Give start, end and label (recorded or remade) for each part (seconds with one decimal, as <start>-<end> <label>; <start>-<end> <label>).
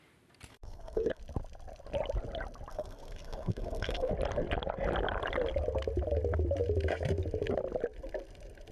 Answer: 0.0-0.5 recorded; 0.5-1.2 remade; 1.2-2.7 recorded; 2.7-4.1 remade; 4.1-8.7 recorded